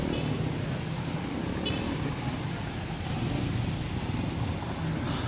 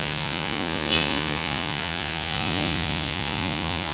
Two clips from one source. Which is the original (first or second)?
first